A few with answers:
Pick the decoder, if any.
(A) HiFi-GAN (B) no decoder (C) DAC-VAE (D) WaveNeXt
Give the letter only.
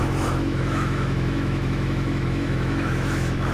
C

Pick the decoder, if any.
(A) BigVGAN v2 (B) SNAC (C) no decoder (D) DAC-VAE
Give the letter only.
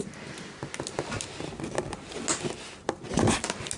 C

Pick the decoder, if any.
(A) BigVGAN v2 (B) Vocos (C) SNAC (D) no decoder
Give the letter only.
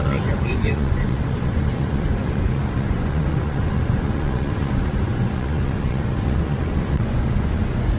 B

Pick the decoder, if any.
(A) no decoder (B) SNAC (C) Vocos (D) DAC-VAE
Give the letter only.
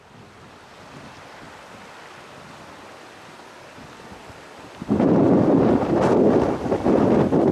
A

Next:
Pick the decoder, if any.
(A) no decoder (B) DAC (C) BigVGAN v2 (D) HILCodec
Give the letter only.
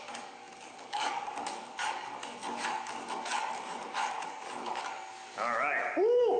B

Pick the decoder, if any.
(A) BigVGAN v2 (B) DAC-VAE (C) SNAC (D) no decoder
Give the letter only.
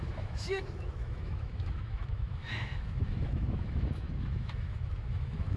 B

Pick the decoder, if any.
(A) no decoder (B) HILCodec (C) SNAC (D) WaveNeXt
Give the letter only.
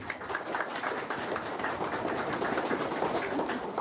A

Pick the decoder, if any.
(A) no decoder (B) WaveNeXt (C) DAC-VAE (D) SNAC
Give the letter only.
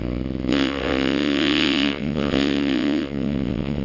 B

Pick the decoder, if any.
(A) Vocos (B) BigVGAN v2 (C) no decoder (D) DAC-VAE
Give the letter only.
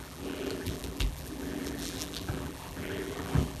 B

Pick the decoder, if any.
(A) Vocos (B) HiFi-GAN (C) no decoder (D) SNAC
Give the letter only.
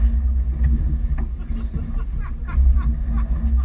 C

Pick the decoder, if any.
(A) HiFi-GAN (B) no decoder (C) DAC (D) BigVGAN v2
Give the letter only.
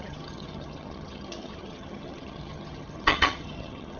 A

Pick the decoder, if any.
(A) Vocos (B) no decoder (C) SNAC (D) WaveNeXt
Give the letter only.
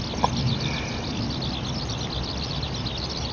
B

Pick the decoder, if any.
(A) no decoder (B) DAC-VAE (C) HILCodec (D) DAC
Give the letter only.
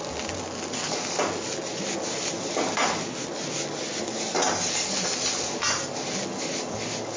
A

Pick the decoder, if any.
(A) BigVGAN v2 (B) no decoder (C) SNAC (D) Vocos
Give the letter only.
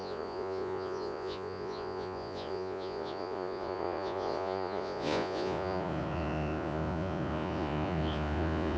D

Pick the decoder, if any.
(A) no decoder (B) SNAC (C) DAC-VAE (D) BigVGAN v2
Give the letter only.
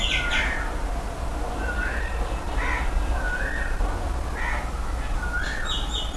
A